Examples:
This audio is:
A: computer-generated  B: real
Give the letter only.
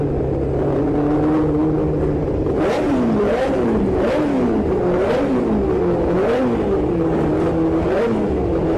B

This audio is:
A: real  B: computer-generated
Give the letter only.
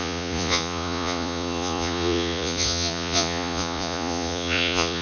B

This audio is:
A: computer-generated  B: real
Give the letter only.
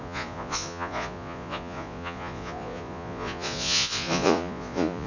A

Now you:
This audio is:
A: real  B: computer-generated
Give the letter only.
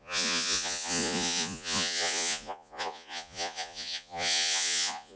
B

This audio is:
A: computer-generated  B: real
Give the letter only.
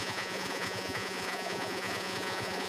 A